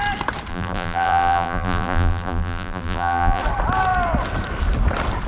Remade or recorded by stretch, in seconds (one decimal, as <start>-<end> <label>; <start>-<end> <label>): 0.0-0.5 recorded; 0.5-3.4 remade; 3.4-5.3 recorded